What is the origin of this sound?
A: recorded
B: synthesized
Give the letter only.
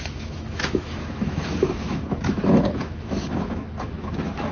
B